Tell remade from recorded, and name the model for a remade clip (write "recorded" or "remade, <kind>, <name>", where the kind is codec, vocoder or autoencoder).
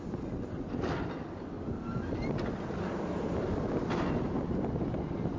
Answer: recorded